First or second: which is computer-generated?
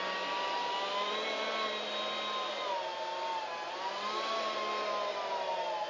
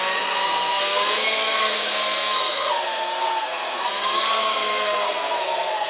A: second